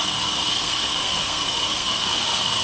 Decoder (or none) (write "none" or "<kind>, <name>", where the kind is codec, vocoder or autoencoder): codec, SNAC